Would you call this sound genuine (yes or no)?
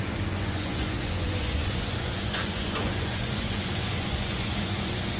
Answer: no